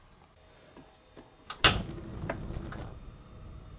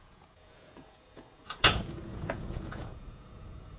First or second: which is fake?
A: second